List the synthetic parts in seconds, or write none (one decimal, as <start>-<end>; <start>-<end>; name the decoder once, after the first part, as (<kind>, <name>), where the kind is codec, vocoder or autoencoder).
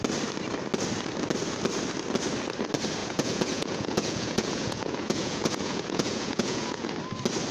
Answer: 3.0-6.9 (vocoder, Vocos)